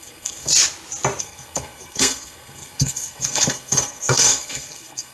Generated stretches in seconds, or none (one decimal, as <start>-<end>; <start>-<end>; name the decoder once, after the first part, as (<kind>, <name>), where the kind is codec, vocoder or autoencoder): 0.0-0.5 (codec, SNAC); 1.2-5.1